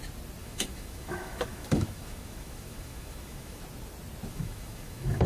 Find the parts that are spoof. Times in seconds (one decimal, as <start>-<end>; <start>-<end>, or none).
0.4-3.6; 4.3-5.3